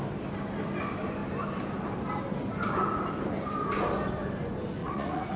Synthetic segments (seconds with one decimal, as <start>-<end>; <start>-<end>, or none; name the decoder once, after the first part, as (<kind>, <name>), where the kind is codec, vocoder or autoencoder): 4.8-5.4 (vocoder, Vocos)